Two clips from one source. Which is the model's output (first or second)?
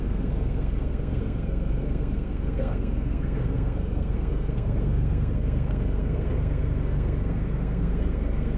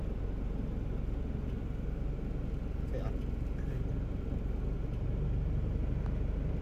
first